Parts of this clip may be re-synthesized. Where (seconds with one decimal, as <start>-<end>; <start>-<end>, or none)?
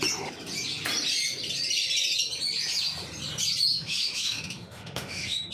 3.7-5.5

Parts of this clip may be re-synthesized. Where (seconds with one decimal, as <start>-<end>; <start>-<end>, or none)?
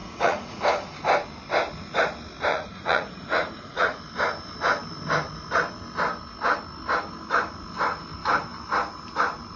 0.0-0.6; 2.5-4.0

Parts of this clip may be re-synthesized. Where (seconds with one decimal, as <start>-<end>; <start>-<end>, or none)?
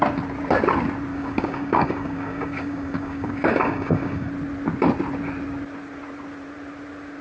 1.1-4.3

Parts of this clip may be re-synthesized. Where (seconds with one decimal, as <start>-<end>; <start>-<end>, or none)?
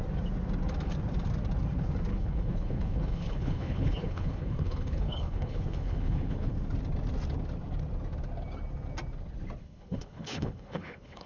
2.1-6.5; 9.6-11.3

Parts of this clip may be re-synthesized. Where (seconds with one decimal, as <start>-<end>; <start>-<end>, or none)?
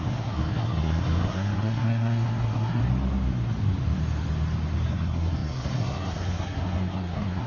0.0-2.8; 4.9-7.5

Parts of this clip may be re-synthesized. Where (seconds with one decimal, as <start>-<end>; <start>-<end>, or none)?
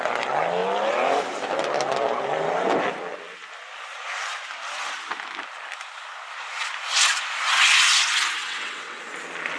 8.4-9.0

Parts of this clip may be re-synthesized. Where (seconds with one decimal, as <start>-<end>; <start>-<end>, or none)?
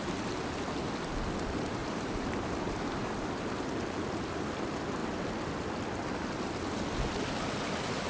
1.8-3.1